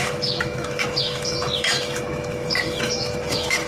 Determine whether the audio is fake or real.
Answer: fake